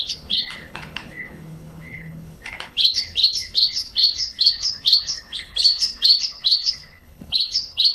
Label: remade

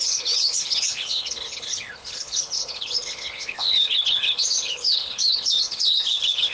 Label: remade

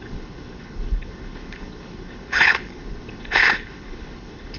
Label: remade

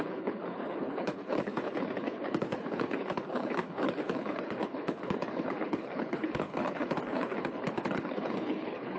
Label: remade